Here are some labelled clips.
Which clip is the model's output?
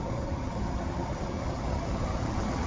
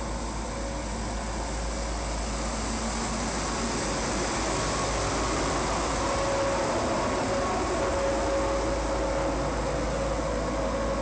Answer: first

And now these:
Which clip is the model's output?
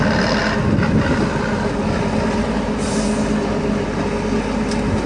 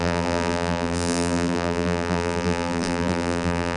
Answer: second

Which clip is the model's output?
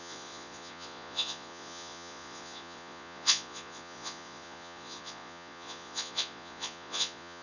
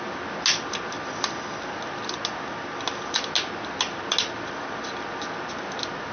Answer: first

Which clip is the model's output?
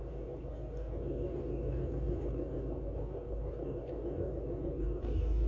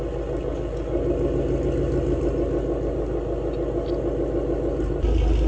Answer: first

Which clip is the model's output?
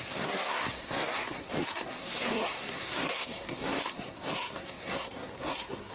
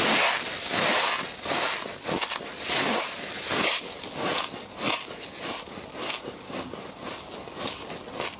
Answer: first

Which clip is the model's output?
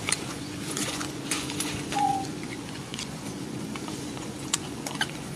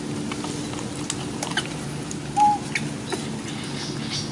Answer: first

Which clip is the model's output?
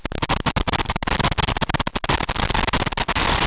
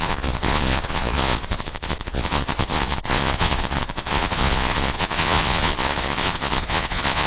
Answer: second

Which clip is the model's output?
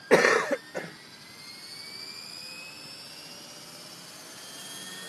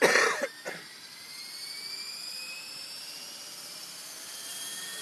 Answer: second